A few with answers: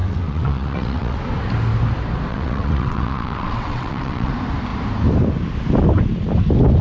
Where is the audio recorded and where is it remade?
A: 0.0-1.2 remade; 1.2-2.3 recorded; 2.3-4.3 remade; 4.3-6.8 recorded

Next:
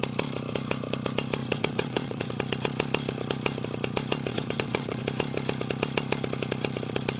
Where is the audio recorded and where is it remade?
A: 0.0-1.4 recorded; 1.4-2.3 remade; 2.3-4.3 recorded; 4.3-5.0 remade; 5.0-7.2 recorded